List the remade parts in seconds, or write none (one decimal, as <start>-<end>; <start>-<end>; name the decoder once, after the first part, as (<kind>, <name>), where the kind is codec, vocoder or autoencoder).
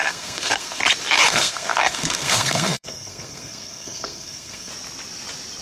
0.0-0.8 (codec, SNAC); 1.3-4.7